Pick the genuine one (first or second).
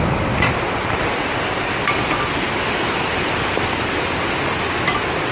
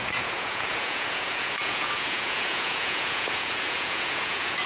first